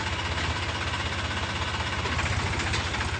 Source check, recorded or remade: recorded